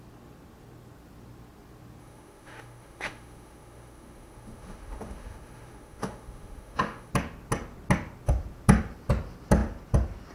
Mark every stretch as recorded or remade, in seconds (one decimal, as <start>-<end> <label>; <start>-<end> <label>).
0.0-2.0 recorded; 2.0-7.1 remade; 7.1-10.3 recorded